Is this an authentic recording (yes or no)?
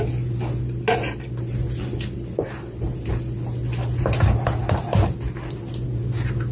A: yes